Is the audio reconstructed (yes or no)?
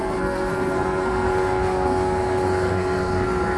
yes